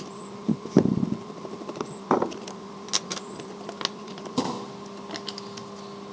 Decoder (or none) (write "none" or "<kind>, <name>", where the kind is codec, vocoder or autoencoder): none